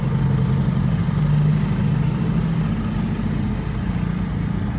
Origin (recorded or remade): recorded